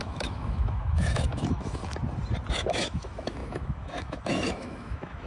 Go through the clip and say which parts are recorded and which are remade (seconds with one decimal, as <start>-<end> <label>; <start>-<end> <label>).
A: 0.0-1.8 remade; 1.8-2.5 recorded; 2.5-5.3 remade